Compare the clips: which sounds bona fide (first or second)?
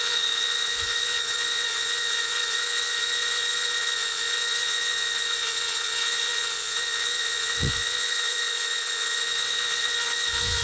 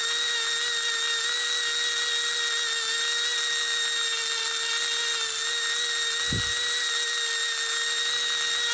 second